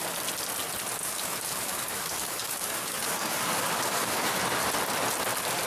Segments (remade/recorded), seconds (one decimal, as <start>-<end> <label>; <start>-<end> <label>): 0.0-1.0 recorded; 1.0-4.4 remade; 4.4-5.7 recorded